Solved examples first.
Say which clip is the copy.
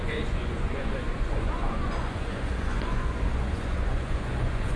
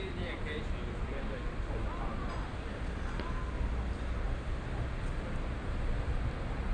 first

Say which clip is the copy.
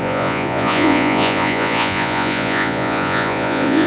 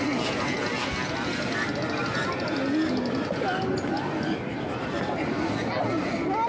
first